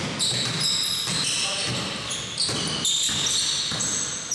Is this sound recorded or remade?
recorded